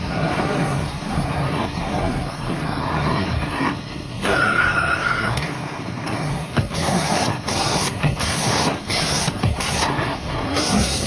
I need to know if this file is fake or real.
fake